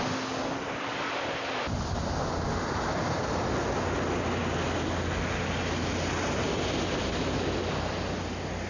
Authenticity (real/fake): real